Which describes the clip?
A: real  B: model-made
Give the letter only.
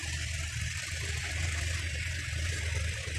A